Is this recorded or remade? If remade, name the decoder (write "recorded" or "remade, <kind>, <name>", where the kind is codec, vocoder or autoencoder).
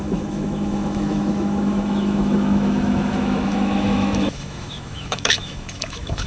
remade, autoencoder, DAC-VAE